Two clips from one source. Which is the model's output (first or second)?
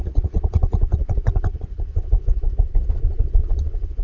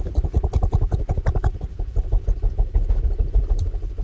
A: first